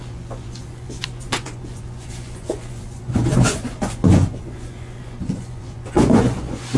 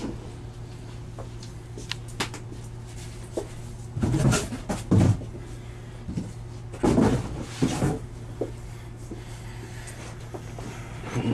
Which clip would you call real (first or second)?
second